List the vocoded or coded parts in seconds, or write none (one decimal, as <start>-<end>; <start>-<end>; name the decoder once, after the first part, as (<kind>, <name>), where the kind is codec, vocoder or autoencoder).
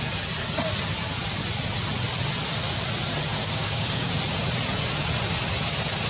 3.4-4.1 (codec, DAC)